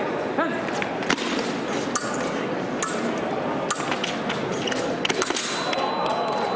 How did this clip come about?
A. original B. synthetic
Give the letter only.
A